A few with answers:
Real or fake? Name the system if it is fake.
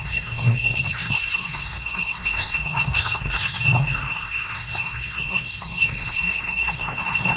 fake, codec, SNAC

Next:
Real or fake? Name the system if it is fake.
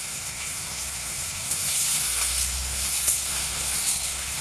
fake, codec, SNAC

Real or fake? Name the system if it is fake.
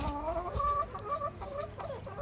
real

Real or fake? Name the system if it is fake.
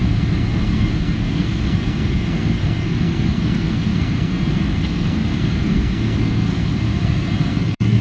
fake, codec, SNAC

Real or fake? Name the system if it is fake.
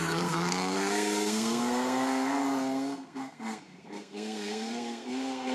fake, codec, SNAC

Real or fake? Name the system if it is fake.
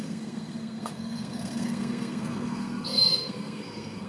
fake, codec, SNAC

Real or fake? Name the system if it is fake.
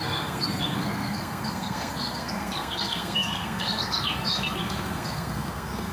fake, codec, SNAC